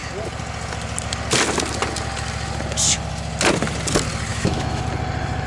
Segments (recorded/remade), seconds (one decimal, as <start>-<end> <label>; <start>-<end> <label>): 0.0-4.3 recorded; 4.3-4.8 remade; 4.8-5.5 recorded